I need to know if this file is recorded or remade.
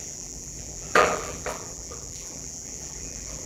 remade